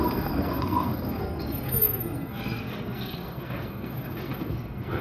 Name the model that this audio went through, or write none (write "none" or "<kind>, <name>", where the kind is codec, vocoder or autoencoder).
codec, SNAC